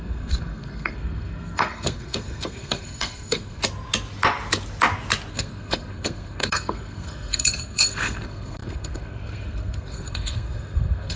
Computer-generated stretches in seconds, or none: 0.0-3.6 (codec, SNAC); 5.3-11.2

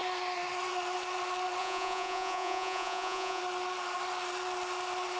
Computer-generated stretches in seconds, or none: 1.6-3.4 (vocoder, Vocos)

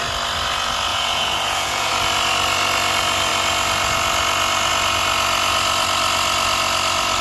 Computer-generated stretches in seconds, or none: 0.9-1.9 (vocoder, Vocos)